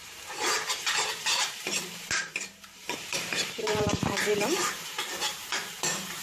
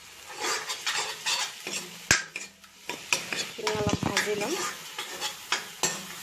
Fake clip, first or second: first